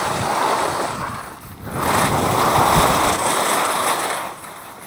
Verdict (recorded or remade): recorded